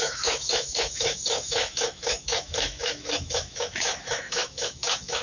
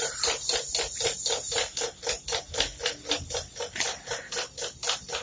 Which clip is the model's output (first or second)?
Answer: first